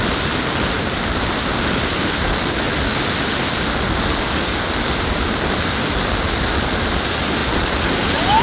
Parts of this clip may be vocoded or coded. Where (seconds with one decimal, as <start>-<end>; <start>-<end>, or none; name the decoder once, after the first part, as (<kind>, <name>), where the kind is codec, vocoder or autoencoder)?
none